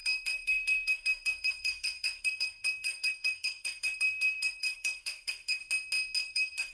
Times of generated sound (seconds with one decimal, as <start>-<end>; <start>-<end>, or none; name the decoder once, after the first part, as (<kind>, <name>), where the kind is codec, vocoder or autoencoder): 0.0-5.6 (codec, SNAC); 6.2-6.7